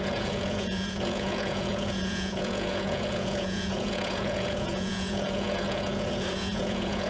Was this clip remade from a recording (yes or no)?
yes